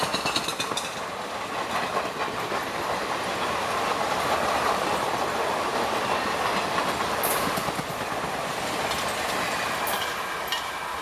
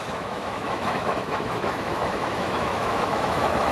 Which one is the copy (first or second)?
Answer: second